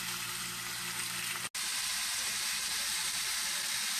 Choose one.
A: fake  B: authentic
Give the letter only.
B